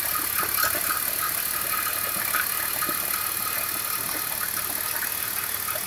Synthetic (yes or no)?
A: no